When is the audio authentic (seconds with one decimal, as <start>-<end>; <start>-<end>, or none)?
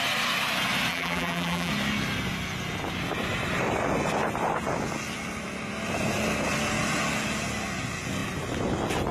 0.0-0.9; 1.7-9.1